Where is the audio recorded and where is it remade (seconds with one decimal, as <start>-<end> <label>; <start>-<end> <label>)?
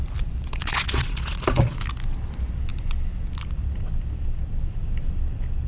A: 0.0-0.6 recorded; 0.6-1.8 remade; 1.8-5.7 recorded